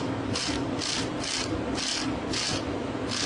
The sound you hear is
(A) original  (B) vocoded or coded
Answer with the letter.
A